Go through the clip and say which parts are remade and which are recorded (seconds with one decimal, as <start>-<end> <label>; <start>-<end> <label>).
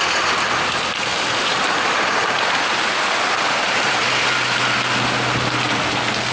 0.0-1.1 recorded; 1.1-4.2 remade; 4.2-6.3 recorded